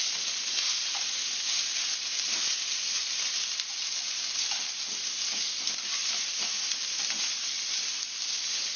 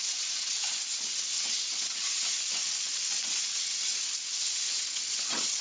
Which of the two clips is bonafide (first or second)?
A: first